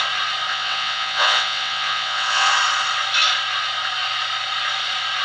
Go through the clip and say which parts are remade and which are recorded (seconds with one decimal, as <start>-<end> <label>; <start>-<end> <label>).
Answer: 0.0-0.5 recorded; 0.5-2.5 remade; 2.5-5.2 recorded